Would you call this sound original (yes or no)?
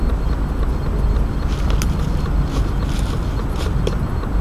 yes